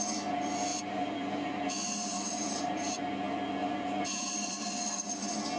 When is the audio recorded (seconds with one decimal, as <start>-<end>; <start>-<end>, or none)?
0.0-0.7; 1.8-2.3; 3.0-3.6; 4.5-5.6